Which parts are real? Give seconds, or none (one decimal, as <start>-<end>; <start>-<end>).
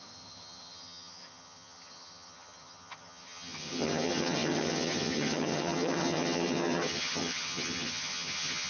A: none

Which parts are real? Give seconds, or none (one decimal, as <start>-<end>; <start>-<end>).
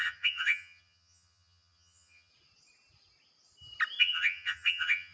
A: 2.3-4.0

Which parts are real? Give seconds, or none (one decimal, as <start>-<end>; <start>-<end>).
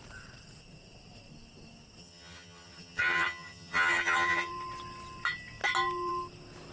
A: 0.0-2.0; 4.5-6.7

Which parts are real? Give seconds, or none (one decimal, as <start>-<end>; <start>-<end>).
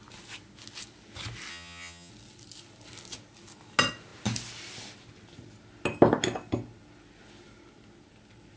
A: 0.0-1.5; 2.1-8.6